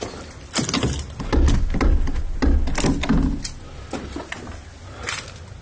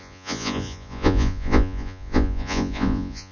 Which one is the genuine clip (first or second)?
first